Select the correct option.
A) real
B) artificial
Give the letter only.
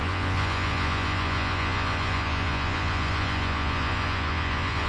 B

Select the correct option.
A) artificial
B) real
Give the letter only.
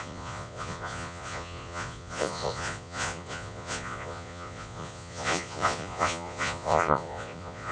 A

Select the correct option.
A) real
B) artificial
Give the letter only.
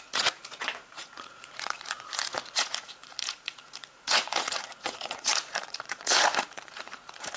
B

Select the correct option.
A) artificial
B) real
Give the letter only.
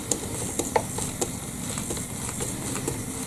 B